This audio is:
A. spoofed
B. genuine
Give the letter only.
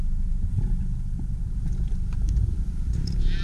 A